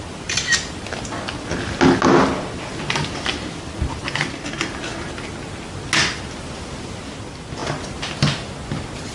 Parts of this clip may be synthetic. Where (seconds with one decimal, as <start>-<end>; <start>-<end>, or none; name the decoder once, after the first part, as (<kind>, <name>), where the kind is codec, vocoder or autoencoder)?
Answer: none